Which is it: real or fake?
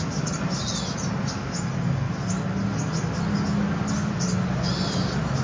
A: real